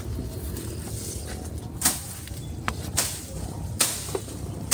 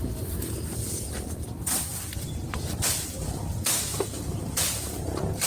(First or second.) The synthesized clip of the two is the second